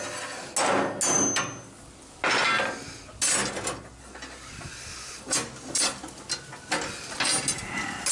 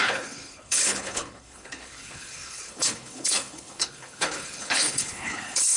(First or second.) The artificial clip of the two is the second